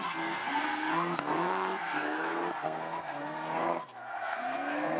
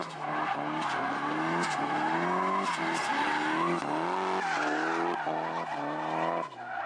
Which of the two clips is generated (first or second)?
first